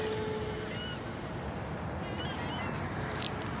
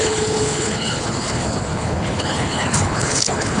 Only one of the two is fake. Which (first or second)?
second